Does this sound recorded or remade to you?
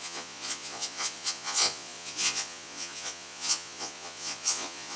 remade